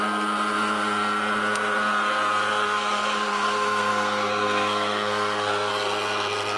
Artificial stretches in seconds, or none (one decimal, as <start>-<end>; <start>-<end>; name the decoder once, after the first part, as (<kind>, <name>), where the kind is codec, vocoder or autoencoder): 2.5-5.7 (codec, SNAC)